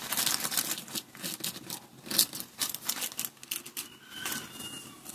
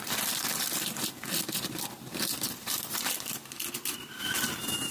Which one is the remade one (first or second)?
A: second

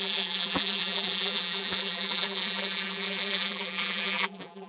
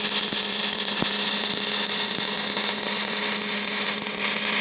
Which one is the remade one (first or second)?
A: first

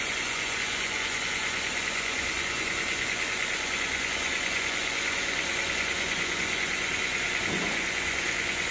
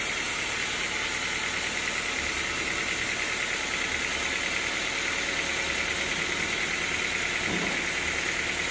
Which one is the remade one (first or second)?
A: first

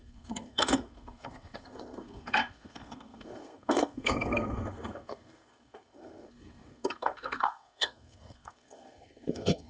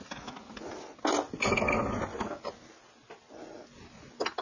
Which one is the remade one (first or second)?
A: first